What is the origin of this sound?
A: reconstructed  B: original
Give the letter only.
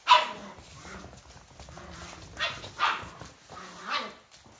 B